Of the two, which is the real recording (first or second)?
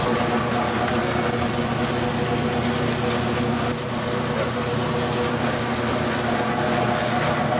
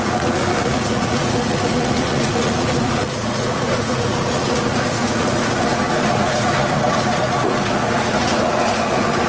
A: first